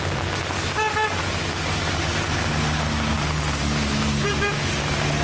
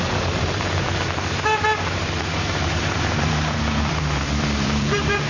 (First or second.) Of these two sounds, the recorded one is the first